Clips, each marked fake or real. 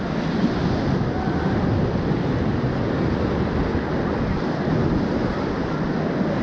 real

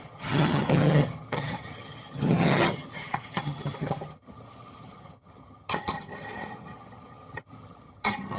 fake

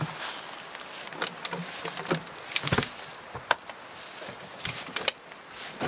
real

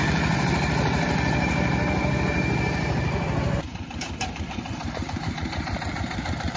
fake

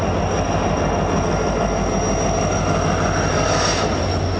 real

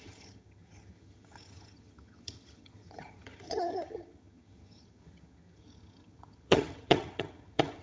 fake